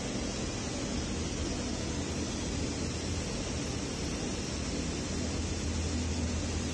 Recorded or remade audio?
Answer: recorded